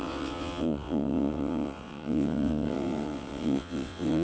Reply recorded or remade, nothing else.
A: remade